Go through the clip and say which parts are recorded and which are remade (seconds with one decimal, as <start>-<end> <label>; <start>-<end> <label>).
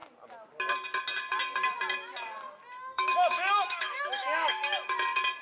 0.0-2.8 recorded; 2.8-4.6 remade; 4.6-5.4 recorded